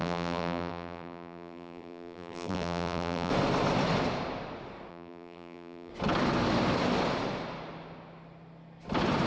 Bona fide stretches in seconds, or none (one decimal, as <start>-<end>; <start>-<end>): 3.3-4.9; 5.9-9.3